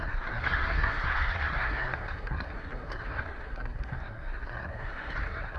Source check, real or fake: fake